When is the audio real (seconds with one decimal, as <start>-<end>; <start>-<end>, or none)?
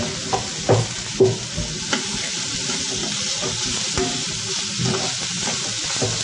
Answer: 0.0-6.2